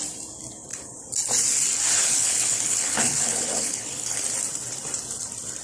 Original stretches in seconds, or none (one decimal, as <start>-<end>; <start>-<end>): 0.0-2.0; 4.2-5.6